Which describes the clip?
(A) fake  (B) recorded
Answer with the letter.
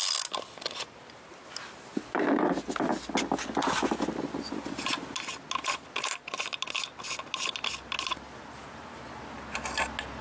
B